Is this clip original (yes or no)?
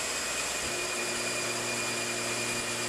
yes